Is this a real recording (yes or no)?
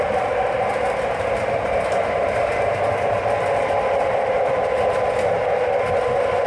yes